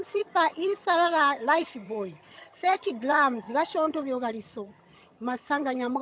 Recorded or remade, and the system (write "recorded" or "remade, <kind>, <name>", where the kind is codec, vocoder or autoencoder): remade, vocoder, HiFi-GAN